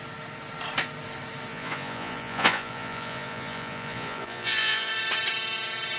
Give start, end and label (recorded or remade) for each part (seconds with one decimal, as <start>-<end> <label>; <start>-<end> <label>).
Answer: 0.0-1.5 recorded; 1.5-4.9 remade; 4.9-6.0 recorded